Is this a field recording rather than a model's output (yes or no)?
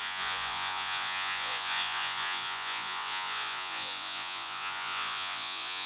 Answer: no